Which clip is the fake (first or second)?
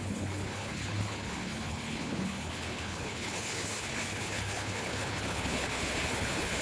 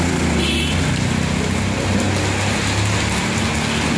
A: first